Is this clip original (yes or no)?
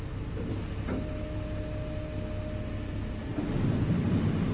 yes